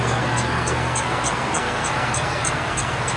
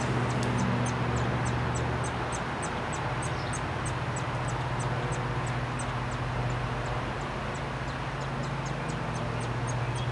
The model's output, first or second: first